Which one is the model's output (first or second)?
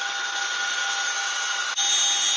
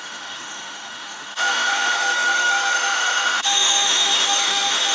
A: second